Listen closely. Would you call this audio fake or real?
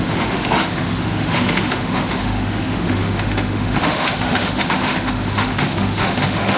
fake